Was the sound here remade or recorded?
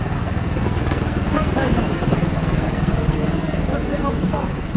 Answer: remade